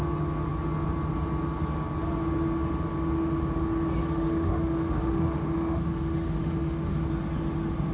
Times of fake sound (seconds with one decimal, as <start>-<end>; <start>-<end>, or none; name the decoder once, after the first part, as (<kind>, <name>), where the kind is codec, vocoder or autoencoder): 4.0-7.1 (autoencoder, DAC-VAE)

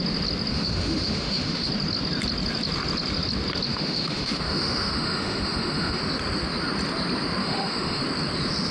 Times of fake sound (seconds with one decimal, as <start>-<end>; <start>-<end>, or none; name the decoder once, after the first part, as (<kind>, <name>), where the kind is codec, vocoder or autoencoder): 0.5-1.7 (autoencoder, DAC-VAE); 3.7-6.0; 7.4-8.0

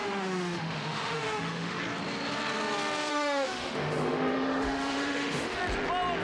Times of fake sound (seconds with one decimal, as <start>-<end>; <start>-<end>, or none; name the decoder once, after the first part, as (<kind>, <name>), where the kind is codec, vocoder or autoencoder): 0.0-1.8 (autoencoder, DAC-VAE); 3.1-5.6

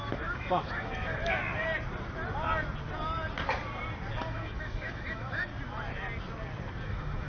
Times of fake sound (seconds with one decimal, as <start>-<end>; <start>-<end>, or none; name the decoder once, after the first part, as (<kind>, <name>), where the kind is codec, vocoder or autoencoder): 0.0-1.4 (autoencoder, DAC-VAE); 4.2-5.5; 6.8-7.3

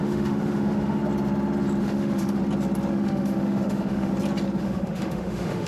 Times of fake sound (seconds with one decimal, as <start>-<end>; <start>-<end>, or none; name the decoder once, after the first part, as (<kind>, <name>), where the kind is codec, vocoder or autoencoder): 0.0-1.0 (autoencoder, DAC-VAE); 1.8-2.4; 2.9-4.1; 4.6-5.7